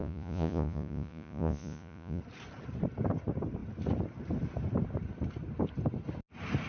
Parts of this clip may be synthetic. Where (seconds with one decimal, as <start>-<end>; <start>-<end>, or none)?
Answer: 0.0-2.2